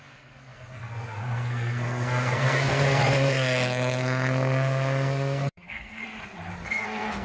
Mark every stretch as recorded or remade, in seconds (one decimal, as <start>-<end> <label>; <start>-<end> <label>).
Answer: 0.0-6.0 remade; 6.0-6.5 recorded; 6.5-7.2 remade